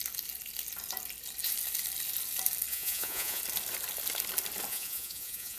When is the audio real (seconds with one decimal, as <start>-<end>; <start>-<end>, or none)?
0.0-2.7; 3.4-4.7